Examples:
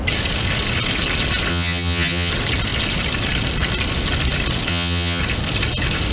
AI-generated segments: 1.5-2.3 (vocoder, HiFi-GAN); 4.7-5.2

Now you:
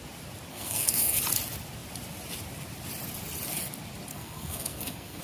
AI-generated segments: 0.5-1.2 (codec, SNAC); 4.1-5.2

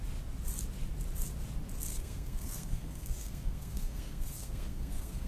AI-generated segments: 1.9-5.3 (codec, SNAC)